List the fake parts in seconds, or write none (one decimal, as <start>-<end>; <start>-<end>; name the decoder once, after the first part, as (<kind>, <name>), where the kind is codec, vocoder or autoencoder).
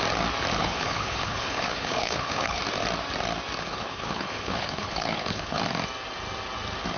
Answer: 0.6-2.6 (codec, HILCodec); 3.6-5.6